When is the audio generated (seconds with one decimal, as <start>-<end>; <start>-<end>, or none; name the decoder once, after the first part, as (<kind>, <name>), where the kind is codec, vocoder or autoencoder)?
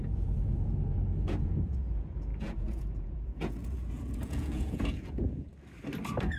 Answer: 0.0-5.5 (vocoder, Vocos)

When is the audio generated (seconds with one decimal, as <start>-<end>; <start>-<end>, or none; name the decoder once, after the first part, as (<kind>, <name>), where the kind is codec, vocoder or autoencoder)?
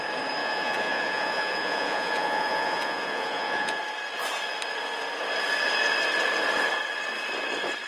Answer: 0.4-3.8 (vocoder, Vocos)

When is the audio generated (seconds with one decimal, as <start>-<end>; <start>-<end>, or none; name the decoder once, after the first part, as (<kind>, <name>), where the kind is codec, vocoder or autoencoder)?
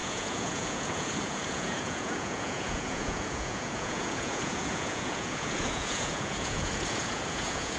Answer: 0.0-7.8 (vocoder, Vocos)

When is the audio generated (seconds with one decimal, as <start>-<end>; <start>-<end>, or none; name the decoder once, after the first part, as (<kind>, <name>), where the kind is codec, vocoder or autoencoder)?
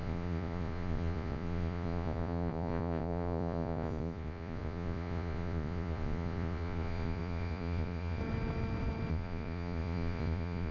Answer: 0.0-8.2 (vocoder, Vocos); 9.1-10.7